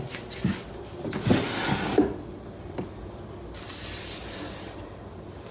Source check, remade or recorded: recorded